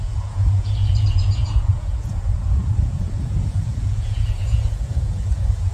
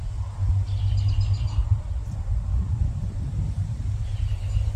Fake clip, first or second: first